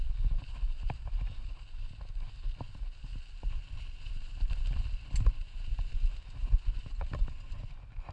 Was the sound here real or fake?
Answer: real